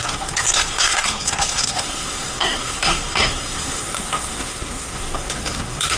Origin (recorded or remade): remade